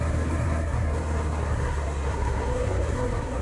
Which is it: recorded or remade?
remade